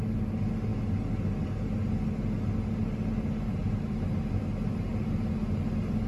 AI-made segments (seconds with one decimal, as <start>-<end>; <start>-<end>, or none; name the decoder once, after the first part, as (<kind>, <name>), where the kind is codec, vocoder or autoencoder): none